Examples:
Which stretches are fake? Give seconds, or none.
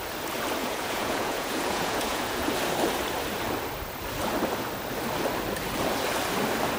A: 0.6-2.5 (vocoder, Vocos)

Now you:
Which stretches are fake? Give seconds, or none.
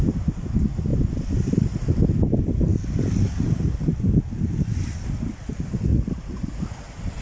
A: 5.9-6.6 (vocoder, Vocos)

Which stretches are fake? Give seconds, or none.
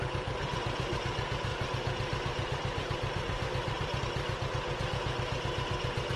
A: 1.5-4.0 (vocoder, BigVGAN v2)